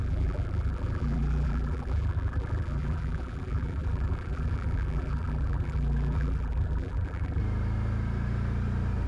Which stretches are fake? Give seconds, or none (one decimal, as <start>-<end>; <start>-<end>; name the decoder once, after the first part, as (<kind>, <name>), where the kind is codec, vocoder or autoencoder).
0.0-7.4 (vocoder, BigVGAN v2)